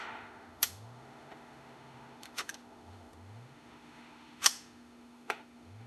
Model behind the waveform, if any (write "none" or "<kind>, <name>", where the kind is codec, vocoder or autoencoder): autoencoder, DAC-VAE